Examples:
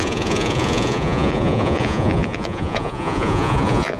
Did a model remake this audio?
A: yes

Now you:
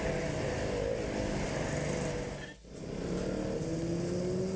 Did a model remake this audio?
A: no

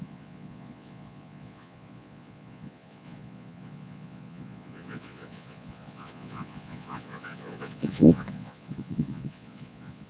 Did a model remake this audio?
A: yes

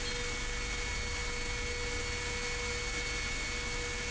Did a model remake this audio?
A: no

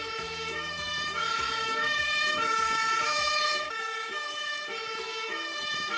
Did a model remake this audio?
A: yes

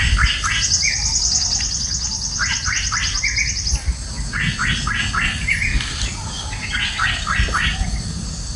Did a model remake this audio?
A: no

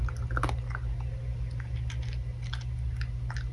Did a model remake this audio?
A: no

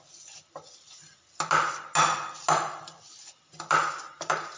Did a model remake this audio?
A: no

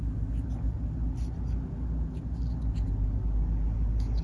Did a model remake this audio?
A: no